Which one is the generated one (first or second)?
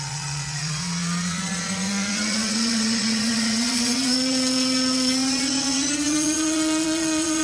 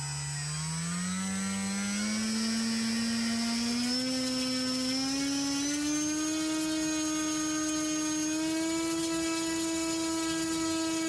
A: first